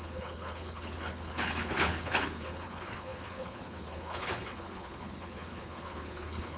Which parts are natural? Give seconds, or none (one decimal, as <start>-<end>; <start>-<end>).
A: none